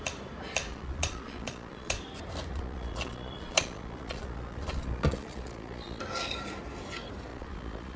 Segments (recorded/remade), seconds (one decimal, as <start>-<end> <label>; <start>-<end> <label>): 0.0-0.7 recorded; 0.7-2.0 remade; 2.0-2.5 recorded; 2.5-6.0 remade; 6.0-7.3 recorded; 7.3-8.0 remade